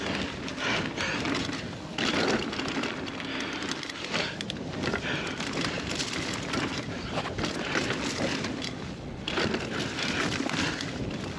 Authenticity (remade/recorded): recorded